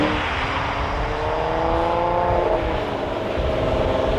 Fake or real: real